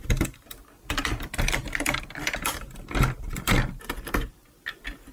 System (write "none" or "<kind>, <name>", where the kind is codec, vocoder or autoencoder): none